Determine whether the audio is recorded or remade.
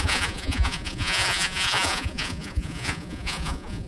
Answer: remade